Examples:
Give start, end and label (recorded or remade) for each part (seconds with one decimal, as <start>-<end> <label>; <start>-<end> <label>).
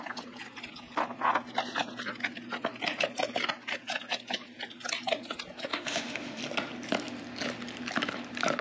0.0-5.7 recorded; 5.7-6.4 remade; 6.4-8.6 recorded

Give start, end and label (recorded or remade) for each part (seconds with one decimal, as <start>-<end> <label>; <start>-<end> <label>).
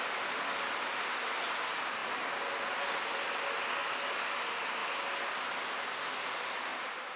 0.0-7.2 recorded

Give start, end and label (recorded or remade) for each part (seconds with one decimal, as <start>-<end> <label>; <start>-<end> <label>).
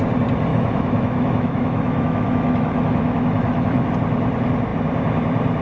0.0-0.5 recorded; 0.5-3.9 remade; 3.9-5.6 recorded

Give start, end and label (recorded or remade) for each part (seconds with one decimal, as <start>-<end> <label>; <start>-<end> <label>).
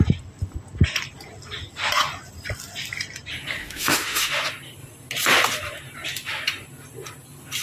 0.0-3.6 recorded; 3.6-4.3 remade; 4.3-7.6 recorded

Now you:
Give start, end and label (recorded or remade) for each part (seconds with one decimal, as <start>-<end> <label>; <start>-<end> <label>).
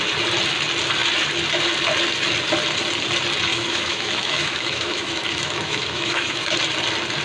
0.0-3.5 recorded; 3.5-6.6 remade; 6.6-7.2 recorded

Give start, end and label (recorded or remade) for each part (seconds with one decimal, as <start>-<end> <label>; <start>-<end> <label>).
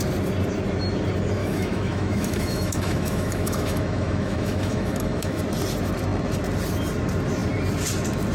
0.0-1.4 recorded; 1.4-5.4 remade; 5.4-8.3 recorded